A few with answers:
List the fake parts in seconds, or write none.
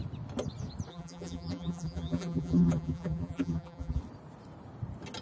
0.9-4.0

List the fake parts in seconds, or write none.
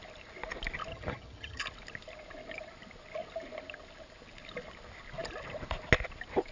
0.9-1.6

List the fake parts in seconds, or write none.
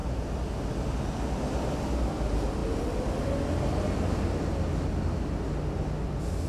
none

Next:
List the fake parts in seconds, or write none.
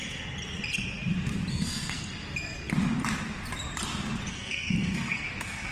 1.5-2.1; 4.3-5.7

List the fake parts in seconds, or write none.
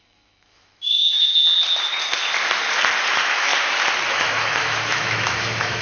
0.0-1.3; 3.1-3.5; 4.1-5.8